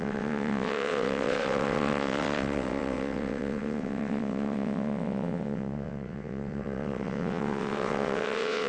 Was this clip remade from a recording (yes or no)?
yes